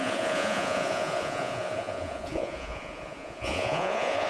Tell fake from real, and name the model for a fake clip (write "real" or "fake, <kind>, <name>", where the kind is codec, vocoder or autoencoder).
fake, vocoder, Vocos